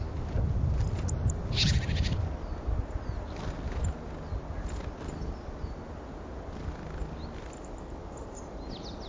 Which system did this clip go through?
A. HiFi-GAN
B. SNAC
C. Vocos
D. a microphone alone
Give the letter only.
D